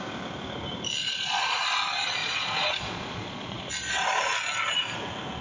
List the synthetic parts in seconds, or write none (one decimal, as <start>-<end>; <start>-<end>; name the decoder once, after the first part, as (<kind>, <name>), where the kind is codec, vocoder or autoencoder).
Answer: 1.0-1.6 (vocoder, Vocos); 2.2-3.7